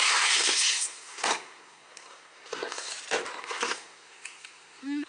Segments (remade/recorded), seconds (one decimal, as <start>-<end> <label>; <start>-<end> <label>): 0.0-2.9 remade; 2.9-3.4 recorded; 3.4-5.1 remade